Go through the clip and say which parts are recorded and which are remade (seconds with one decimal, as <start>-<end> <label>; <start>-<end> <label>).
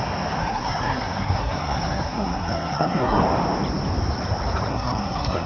0.0-0.4 recorded; 0.4-3.2 remade; 3.2-4.7 recorded; 4.7-5.5 remade